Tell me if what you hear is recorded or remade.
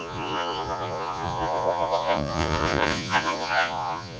remade